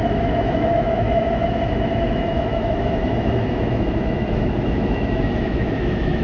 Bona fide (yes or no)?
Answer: no